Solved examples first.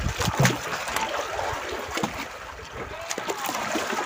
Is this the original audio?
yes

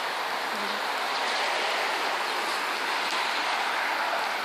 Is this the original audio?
yes